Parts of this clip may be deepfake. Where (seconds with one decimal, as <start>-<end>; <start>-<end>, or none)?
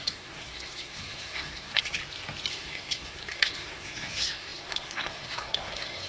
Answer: 0.0-2.0; 2.5-6.1